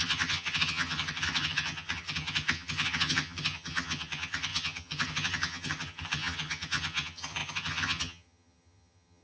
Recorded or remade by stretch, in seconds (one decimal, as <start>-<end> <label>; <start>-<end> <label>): 0.0-9.2 remade

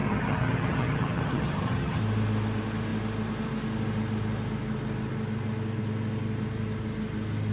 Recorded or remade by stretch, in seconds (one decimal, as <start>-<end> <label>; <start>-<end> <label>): 0.0-2.0 remade; 2.0-7.5 recorded